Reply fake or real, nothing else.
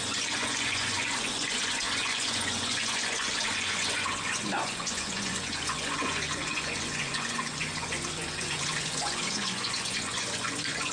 fake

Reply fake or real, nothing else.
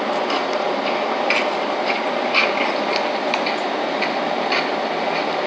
real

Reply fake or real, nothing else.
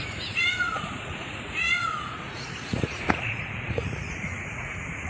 fake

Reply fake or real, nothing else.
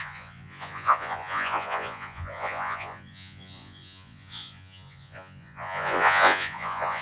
fake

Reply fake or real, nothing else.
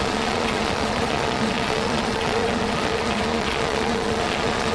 fake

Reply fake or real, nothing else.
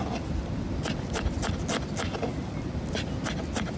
real